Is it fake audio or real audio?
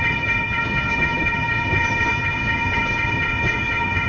fake